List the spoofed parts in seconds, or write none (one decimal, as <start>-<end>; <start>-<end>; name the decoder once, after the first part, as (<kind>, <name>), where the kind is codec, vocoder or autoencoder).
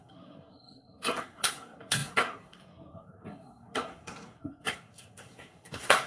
0.0-6.1 (codec, SNAC)